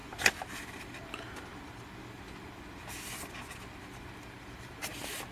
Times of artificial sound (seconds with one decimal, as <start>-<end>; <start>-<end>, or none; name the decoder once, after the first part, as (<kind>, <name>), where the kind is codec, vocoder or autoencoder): none